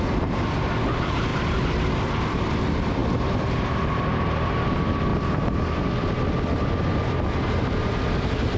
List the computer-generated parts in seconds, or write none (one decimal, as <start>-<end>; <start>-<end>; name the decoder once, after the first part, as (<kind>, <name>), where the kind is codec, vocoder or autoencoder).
1.3-2.5 (vocoder, BigVGAN v2); 3.0-4.5